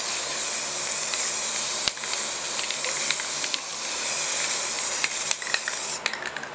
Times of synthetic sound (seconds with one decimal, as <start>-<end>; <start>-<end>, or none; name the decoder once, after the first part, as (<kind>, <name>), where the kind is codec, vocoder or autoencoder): none